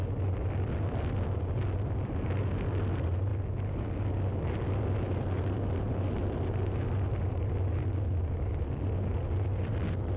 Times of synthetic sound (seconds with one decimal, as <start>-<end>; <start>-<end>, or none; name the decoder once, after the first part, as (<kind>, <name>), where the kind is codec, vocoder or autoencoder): none